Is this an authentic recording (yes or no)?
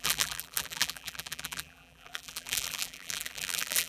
no